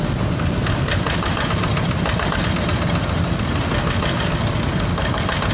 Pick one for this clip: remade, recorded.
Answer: recorded